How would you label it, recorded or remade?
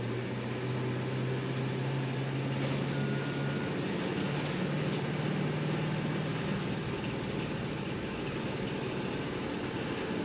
recorded